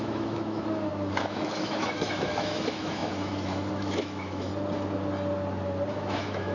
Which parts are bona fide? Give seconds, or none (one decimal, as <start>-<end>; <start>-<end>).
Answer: 4.5-5.9